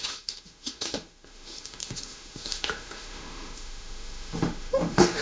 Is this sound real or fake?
fake